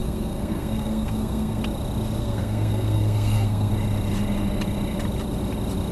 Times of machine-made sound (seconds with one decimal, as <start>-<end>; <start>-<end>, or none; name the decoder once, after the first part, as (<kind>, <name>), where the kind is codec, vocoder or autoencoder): 0.0-1.6 (codec, SNAC); 2.2-3.7

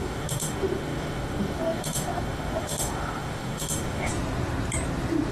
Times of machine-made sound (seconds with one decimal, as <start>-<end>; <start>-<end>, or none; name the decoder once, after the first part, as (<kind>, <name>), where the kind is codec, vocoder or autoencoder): 0.0-4.1 (autoencoder, DAC-VAE)